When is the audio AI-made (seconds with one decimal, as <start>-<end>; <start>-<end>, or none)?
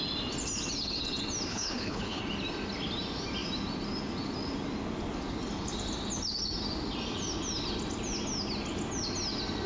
1.5-2.2